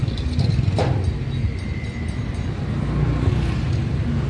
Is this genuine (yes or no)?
yes